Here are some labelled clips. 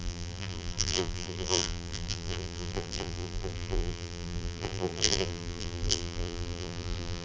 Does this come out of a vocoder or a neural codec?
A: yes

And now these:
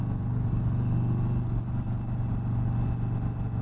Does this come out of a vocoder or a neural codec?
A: no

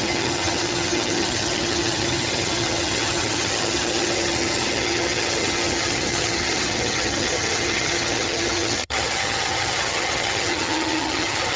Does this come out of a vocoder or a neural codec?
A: yes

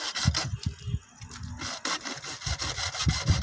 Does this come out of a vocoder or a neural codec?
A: no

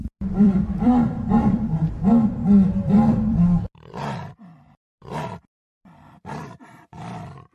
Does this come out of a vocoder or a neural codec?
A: yes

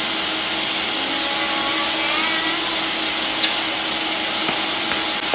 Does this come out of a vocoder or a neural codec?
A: no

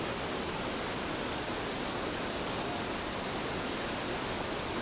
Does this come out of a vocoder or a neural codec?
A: no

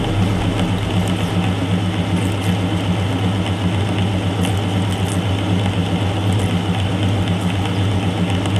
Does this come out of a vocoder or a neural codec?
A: no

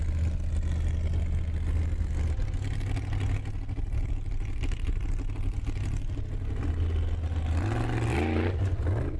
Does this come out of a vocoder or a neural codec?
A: no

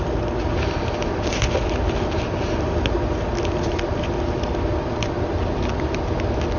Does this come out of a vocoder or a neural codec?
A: no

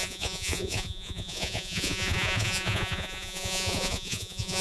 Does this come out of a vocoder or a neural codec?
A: yes